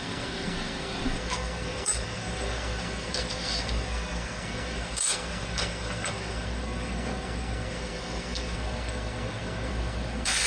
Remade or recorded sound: remade